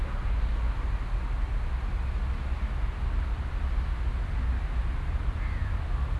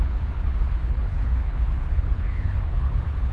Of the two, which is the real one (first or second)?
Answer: first